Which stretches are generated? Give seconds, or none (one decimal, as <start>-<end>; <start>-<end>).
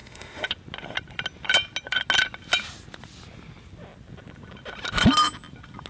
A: 0.0-0.5